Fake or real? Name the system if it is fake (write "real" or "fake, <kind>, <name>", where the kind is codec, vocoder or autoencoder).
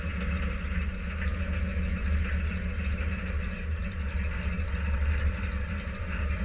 real